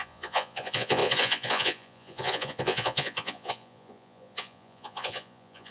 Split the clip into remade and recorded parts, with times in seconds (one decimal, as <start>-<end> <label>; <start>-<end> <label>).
0.0-5.7 remade